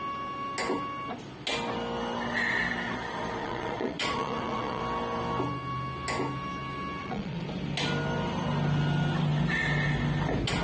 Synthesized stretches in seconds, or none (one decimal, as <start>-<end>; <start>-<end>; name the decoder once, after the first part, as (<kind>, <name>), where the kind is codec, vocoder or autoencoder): 3.4-4.8 (vocoder, Vocos); 7.0-7.5